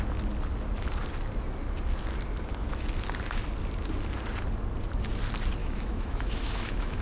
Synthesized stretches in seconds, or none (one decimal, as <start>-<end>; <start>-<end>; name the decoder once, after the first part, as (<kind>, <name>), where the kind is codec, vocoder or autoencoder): 5.6-7.0 (autoencoder, DAC-VAE)